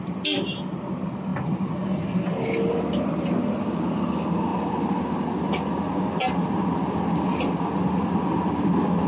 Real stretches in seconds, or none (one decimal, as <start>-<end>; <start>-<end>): 0.0-9.1